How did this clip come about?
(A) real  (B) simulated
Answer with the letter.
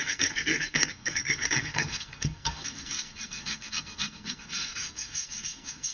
B